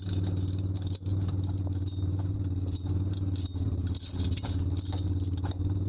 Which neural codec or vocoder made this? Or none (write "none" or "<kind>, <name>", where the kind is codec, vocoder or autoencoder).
vocoder, BigVGAN v2